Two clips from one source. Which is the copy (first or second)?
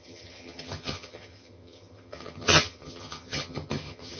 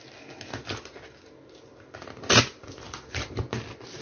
first